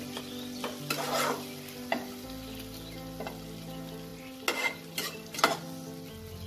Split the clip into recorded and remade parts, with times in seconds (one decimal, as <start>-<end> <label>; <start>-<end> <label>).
0.0-6.5 recorded